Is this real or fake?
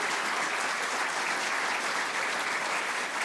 real